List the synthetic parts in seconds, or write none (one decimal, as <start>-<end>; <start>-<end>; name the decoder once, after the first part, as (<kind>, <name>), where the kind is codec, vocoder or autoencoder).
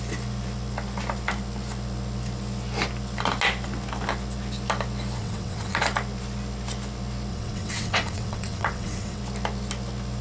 5.2-5.8 (vocoder, WaveNeXt); 7.3-9.2